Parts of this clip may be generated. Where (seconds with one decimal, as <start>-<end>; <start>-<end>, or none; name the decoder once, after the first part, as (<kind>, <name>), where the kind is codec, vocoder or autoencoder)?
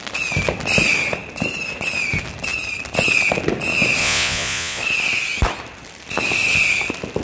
4.0-4.8 (vocoder, Vocos)